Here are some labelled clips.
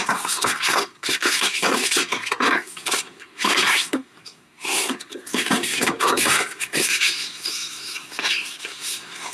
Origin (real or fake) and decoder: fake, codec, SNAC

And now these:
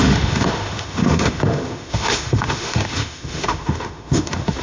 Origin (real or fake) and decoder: fake, autoencoder, DAC-VAE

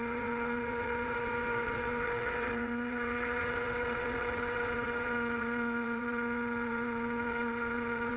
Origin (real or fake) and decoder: fake, vocoder, WaveNeXt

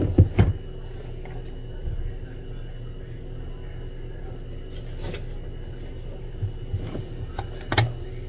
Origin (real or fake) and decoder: real